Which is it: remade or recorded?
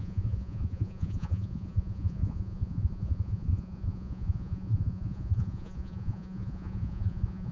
remade